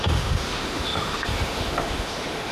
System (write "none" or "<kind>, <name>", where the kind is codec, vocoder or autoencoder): autoencoder, DAC-VAE